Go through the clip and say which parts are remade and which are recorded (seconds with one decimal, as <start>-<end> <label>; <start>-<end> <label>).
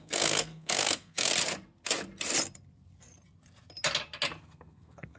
0.0-1.3 remade; 1.3-4.4 recorded; 4.4-5.2 remade